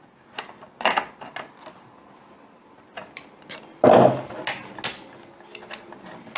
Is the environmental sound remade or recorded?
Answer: recorded